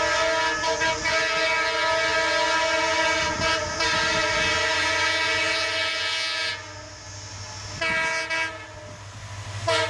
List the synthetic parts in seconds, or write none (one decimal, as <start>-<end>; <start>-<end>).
none